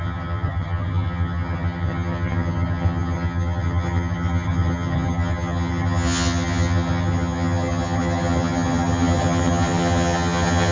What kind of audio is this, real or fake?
fake